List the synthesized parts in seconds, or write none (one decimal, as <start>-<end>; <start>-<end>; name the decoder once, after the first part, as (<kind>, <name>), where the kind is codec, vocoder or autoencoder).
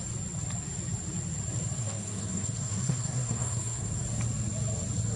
1.8-3.9 (codec, SNAC)